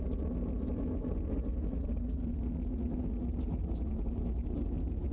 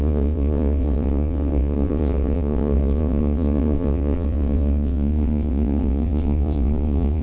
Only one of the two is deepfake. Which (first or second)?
second